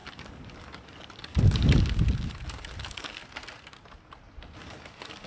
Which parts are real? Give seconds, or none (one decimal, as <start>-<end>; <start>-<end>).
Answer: 3.2-4.6